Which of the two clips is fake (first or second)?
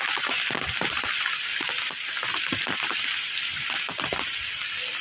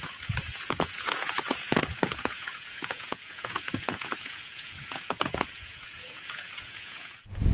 second